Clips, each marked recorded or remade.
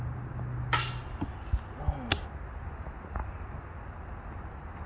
recorded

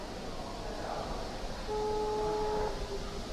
recorded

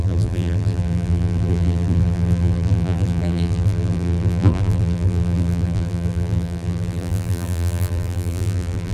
remade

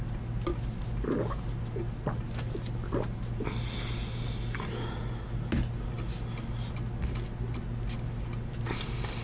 recorded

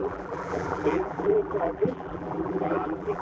remade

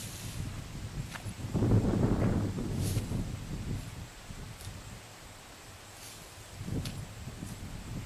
recorded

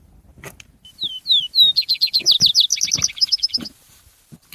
recorded